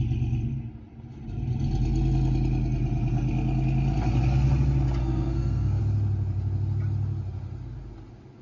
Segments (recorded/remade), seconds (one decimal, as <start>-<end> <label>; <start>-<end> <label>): 0.0-5.0 recorded; 5.0-5.8 remade; 5.8-8.4 recorded